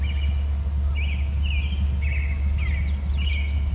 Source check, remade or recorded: recorded